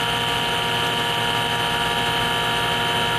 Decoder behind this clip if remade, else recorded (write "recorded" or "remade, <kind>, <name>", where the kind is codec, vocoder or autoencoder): recorded